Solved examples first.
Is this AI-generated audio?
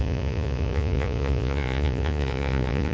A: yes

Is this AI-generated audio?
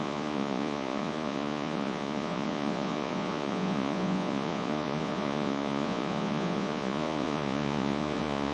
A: yes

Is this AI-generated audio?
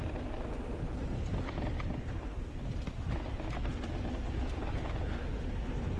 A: no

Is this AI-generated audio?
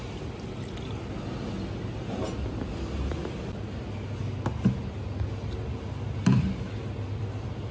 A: no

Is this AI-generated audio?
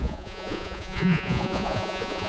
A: yes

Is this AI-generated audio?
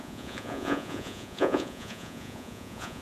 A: yes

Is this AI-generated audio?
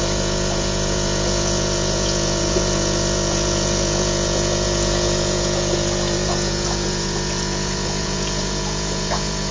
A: yes